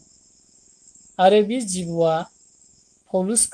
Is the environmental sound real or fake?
fake